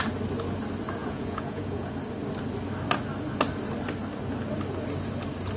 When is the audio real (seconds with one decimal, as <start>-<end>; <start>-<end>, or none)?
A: 0.0-1.0; 1.9-5.6